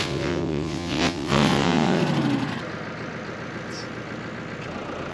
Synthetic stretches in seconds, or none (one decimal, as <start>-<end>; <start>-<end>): 0.0-2.0